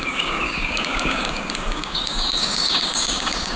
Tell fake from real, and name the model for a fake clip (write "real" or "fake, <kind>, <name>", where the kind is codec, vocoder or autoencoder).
fake, codec, DAC